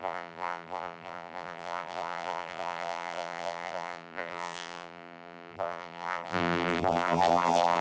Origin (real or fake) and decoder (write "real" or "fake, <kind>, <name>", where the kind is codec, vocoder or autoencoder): fake, vocoder, BigVGAN v2